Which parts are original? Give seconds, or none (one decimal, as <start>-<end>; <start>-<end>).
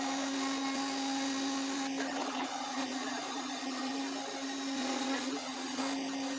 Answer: 0.0-2.2; 3.9-4.8; 5.8-6.4